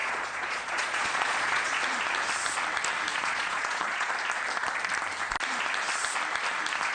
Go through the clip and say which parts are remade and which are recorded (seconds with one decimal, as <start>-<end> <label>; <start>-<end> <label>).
0.0-1.8 remade; 1.8-3.1 recorded; 3.1-4.1 remade; 4.1-6.9 recorded